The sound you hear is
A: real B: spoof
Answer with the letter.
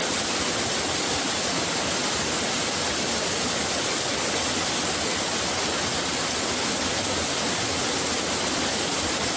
A